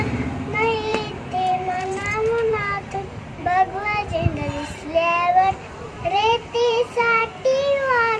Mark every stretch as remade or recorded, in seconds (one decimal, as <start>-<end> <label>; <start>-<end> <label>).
0.0-4.3 remade; 4.3-5.3 recorded; 5.3-7.2 remade; 7.2-8.2 recorded